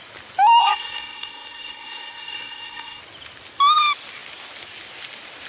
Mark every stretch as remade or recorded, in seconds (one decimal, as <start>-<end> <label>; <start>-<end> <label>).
0.0-0.6 recorded; 0.6-3.0 remade; 3.0-5.5 recorded